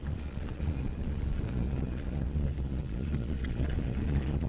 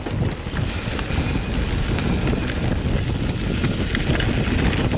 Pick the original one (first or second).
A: second